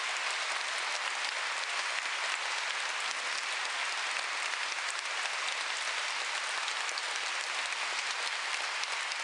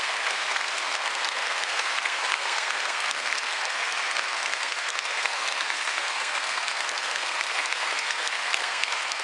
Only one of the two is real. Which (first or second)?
first